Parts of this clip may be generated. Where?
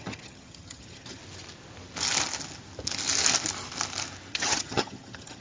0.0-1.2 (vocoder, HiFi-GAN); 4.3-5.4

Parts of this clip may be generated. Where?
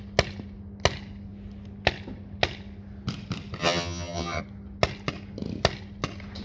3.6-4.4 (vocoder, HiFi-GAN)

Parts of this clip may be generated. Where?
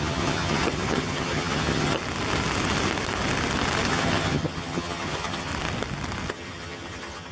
0.0-2.0 (vocoder, HiFi-GAN); 3.9-5.5; 6.3-7.3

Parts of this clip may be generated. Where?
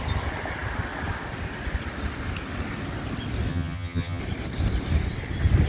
3.5-4.2 (vocoder, HiFi-GAN)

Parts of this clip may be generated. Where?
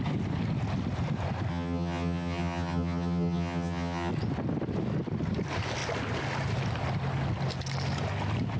1.5-4.1 (vocoder, HiFi-GAN)